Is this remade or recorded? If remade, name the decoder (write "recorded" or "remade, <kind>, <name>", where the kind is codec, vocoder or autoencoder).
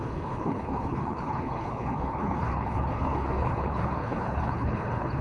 remade, codec, HILCodec